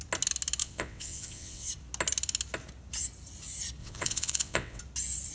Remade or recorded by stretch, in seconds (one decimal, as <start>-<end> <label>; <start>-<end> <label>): 0.0-0.6 recorded; 0.6-1.7 remade; 1.7-3.8 recorded; 3.8-4.8 remade; 4.8-5.3 recorded